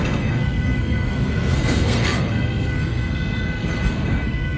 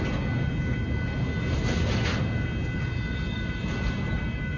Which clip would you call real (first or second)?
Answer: second